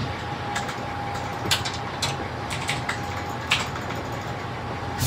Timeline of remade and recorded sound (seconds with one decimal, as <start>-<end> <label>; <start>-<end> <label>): 0.0-0.6 recorded; 0.6-1.3 remade; 1.3-4.4 recorded; 4.4-5.1 remade